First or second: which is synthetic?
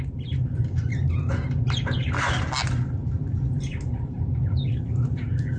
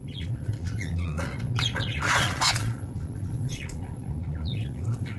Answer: second